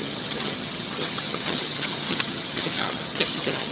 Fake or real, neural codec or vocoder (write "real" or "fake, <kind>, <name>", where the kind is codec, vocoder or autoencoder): fake, vocoder, HiFi-GAN